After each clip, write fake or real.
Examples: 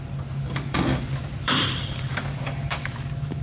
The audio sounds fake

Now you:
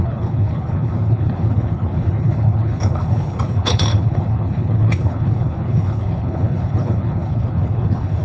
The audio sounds fake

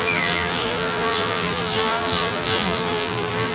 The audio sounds fake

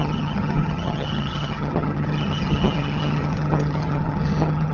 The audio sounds fake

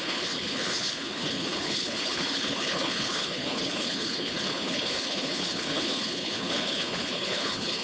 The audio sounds fake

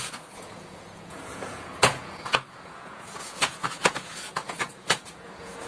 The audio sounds fake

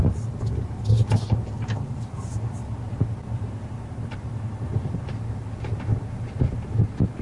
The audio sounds real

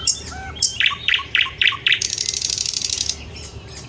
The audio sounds fake